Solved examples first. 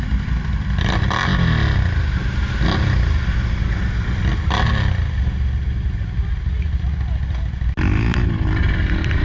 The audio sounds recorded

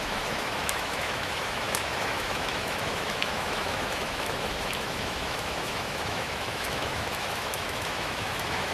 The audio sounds remade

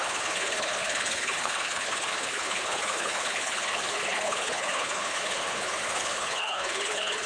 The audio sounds remade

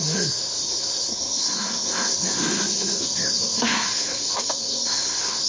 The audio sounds remade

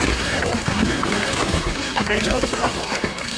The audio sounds remade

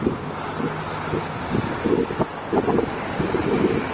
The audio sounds recorded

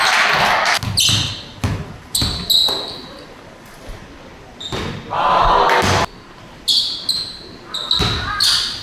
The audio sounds recorded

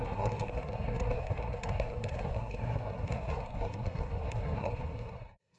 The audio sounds remade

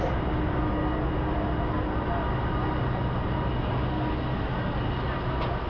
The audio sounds recorded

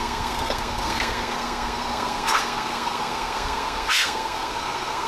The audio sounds remade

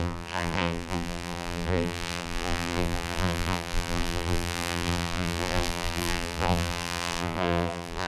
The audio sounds remade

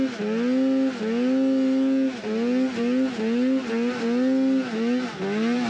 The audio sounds recorded